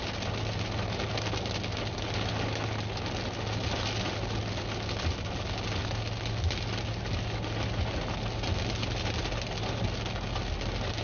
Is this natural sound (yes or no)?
yes